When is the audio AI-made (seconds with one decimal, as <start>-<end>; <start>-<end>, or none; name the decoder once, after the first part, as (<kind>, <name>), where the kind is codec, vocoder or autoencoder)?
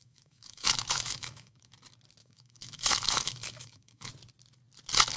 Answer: 0.0-1.7 (autoencoder, DAC-VAE); 2.2-4.1